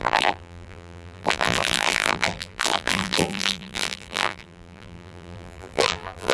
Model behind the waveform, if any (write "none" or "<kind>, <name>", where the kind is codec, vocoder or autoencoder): vocoder, BigVGAN v2